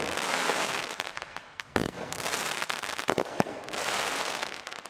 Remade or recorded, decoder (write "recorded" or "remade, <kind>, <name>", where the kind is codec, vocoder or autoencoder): remade, codec, SNAC